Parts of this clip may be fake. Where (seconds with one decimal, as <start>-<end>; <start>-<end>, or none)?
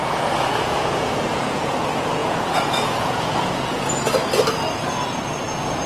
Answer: 0.0-1.8; 2.2-3.9